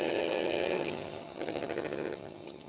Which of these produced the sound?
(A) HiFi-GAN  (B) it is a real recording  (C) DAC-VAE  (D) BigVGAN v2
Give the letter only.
A